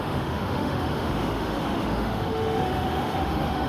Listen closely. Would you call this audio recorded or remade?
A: remade